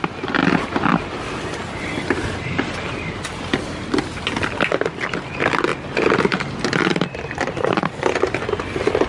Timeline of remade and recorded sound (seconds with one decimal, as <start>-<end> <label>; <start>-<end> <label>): 0.0-9.1 recorded